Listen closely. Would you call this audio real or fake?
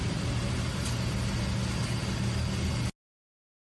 real